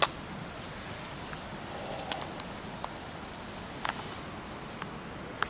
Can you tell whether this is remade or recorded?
recorded